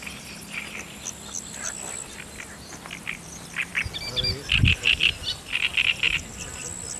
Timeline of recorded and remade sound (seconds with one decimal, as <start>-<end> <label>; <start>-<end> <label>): 0.0-7.0 recorded